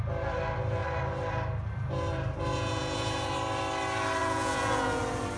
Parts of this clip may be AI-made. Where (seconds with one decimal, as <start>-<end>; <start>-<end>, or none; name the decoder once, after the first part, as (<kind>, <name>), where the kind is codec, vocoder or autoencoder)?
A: 2.5-3.3 (vocoder, Vocos); 4.2-5.0